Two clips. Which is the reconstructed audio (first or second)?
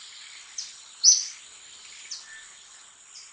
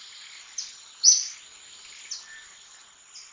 second